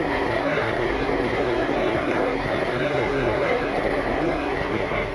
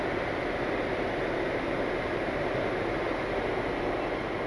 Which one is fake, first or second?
first